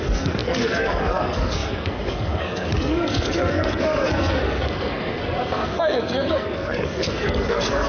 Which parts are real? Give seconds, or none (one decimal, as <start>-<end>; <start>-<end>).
none